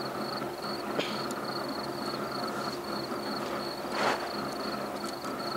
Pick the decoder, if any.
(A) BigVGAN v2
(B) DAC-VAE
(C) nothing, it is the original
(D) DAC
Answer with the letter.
C